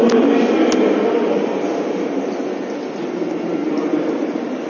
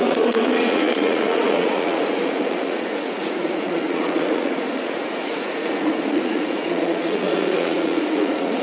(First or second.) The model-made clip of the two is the second